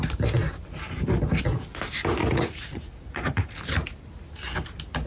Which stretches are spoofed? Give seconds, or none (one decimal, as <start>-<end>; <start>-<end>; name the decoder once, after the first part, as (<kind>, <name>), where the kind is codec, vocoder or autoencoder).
2.2-3.5 (vocoder, Vocos)